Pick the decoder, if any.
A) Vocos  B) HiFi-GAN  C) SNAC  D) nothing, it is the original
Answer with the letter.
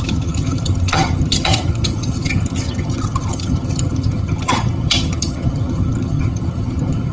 B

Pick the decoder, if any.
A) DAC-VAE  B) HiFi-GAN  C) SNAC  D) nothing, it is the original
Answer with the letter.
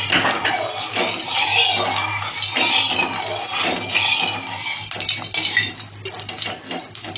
D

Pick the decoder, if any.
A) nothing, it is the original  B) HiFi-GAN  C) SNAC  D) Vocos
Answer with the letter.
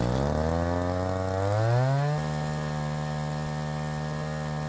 A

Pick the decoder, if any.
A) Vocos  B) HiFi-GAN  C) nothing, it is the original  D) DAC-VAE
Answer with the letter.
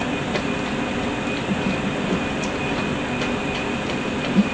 C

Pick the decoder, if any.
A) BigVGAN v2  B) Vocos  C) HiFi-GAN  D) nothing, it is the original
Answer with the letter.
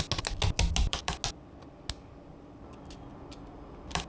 D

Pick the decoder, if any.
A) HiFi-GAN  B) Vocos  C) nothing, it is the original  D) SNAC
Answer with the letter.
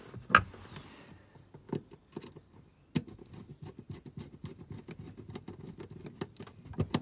C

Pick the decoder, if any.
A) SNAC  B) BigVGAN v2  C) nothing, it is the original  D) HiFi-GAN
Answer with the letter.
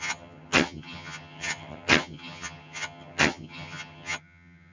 D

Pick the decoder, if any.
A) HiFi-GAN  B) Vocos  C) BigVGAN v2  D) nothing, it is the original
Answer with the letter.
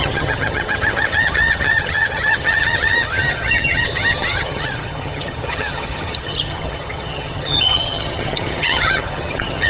A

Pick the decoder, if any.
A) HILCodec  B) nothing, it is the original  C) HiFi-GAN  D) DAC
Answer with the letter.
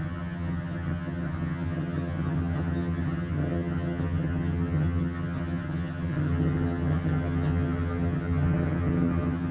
C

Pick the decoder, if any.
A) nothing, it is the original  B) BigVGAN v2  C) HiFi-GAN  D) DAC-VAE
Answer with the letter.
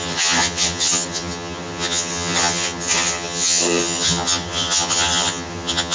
C